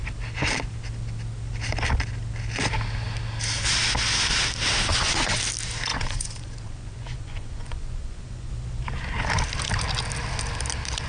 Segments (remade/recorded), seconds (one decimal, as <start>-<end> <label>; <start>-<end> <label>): 0.0-4.9 recorded; 4.9-5.4 remade; 5.4-5.9 recorded; 5.9-8.5 remade; 8.5-11.1 recorded